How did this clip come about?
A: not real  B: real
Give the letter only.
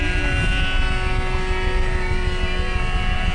B